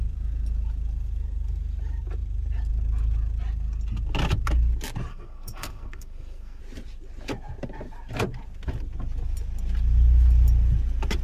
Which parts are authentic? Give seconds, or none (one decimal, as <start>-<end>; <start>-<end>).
0.0-5.1; 6.6-11.2